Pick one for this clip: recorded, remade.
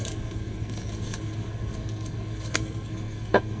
remade